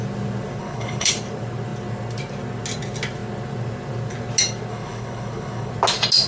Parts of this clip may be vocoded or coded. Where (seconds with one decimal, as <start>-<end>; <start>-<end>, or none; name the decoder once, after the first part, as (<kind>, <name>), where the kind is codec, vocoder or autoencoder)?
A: 0.6-1.1 (codec, HILCodec); 4.7-5.7